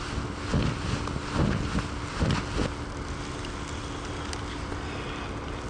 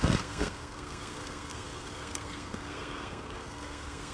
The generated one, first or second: second